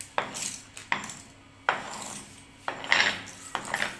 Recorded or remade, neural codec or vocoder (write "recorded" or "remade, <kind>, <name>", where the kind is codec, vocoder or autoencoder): recorded